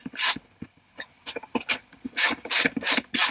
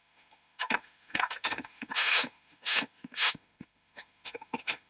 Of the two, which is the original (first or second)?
first